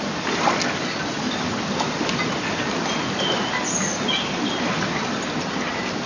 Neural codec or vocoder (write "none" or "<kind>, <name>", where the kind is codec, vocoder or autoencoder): none